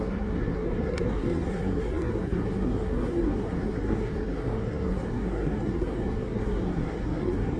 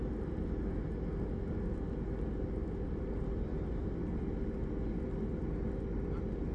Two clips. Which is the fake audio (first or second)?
first